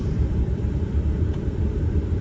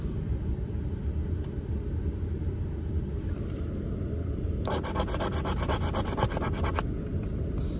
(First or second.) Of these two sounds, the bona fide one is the second